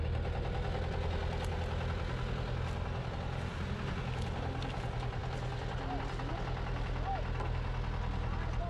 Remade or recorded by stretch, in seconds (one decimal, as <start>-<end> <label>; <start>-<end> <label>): 0.0-8.7 recorded